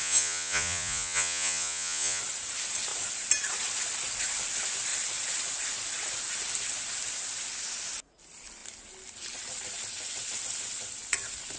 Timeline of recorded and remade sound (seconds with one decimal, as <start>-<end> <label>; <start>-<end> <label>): 0.0-2.2 remade; 2.2-11.6 recorded